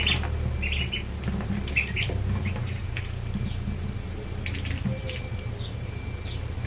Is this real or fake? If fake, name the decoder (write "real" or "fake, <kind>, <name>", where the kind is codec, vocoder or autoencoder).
fake, vocoder, BigVGAN v2